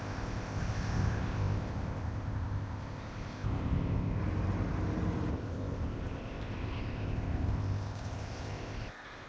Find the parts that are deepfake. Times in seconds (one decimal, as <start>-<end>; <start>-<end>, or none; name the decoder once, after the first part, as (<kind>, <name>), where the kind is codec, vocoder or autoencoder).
0.0-4.2 (codec, ZipCodec); 5.3-9.3